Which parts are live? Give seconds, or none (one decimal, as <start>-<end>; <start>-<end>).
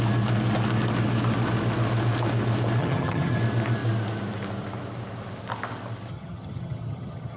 0.0-2.8; 3.4-6.1